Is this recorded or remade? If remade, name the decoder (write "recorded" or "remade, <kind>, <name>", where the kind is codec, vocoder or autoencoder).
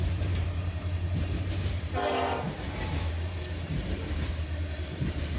remade, vocoder, BigVGAN v2